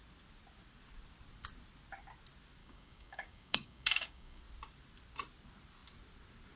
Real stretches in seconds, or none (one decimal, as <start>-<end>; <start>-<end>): 0.0-2.6; 4.4-6.6